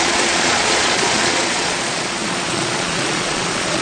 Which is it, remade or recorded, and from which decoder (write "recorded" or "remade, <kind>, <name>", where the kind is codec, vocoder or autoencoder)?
remade, vocoder, Vocos